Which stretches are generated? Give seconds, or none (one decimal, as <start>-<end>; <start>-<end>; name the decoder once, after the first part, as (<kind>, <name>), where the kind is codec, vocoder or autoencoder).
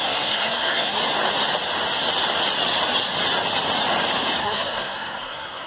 0.0-1.0 (codec, SNAC); 4.4-5.7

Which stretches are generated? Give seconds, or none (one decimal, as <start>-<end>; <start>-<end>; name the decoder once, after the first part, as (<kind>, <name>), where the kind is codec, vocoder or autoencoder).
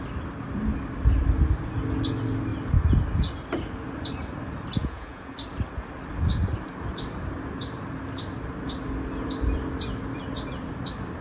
4.8-5.3 (vocoder, Vocos)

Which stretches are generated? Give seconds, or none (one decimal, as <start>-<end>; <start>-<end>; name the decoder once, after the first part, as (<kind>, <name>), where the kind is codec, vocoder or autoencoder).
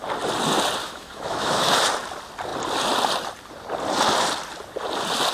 0.8-1.7 (autoencoder, DAC-VAE)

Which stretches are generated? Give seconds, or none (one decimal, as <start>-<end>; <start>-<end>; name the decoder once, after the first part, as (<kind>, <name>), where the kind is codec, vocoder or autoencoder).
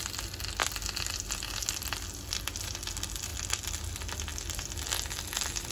none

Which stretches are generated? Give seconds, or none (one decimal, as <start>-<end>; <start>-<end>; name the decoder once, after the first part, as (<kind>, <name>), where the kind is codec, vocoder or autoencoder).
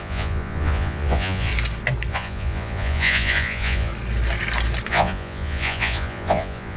0.0-1.5 (vocoder, Vocos); 2.1-3.9; 4.9-6.8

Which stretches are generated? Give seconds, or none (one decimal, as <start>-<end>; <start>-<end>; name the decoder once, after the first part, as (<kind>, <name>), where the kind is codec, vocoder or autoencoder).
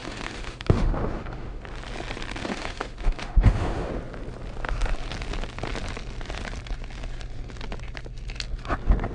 0.0-1.6 (autoencoder, DAC-VAE); 2.4-3.9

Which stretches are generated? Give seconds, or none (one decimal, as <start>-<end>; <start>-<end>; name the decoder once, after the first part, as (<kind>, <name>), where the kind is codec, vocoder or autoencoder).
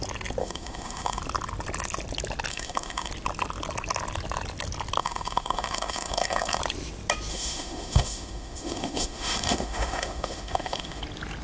0.4-1.2 (autoencoder, DAC-VAE); 2.5-3.1; 5.0-6.6; 7.3-11.0